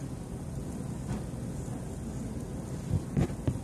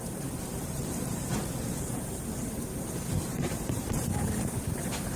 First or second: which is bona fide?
first